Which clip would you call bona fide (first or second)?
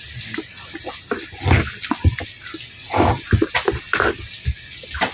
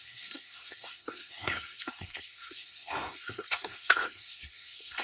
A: first